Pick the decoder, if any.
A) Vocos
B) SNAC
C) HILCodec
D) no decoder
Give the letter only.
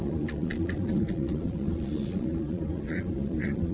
A